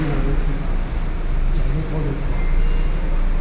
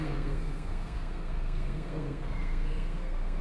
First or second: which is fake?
second